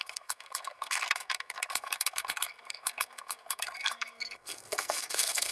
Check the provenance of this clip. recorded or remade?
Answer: remade